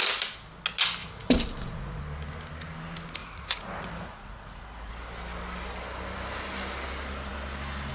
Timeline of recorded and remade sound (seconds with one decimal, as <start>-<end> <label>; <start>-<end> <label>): 0.0-1.0 recorded; 1.0-2.0 remade; 2.0-3.2 recorded; 3.2-4.9 remade; 4.9-7.9 recorded